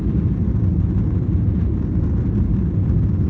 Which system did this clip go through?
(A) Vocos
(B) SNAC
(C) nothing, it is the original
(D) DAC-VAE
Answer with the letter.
C